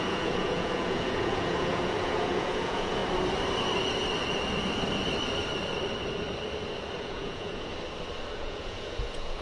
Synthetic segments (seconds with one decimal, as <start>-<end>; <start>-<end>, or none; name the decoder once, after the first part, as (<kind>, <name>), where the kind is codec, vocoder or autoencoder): 0.0-3.0 (vocoder, Vocos); 7.0-7.7; 8.3-9.4